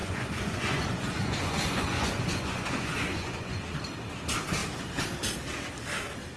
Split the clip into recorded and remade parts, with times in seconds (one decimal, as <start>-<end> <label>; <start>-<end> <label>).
0.0-3.8 remade; 3.8-6.4 recorded

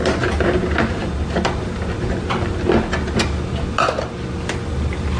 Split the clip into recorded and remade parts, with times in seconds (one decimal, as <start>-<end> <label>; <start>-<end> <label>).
0.0-5.2 recorded